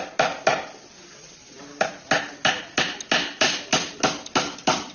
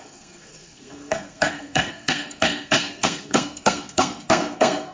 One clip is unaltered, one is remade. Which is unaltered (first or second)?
first